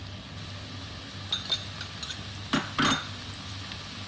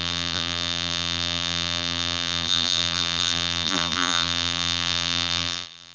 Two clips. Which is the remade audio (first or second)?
second